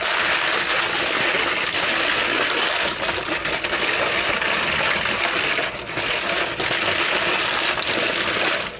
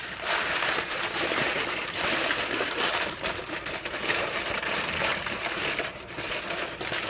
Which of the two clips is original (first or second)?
first